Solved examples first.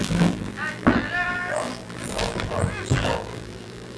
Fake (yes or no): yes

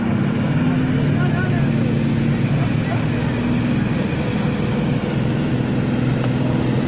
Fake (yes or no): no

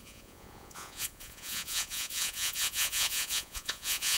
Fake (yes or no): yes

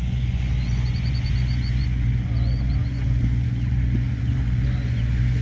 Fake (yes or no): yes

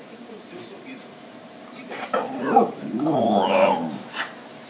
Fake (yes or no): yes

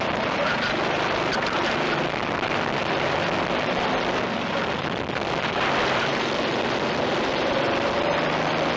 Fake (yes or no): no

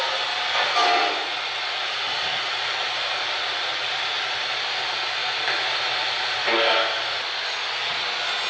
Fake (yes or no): no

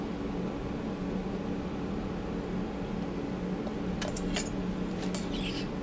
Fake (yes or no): no